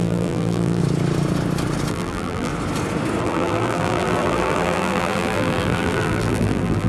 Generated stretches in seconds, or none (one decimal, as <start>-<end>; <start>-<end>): 0.0-0.8; 1.9-2.5; 3.2-6.9